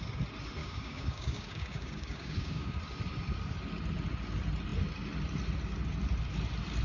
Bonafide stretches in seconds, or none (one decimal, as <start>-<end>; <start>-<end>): 0.0-0.6; 2.8-6.8